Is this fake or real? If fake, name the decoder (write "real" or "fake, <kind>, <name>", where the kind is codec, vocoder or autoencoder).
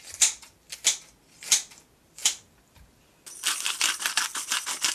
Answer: real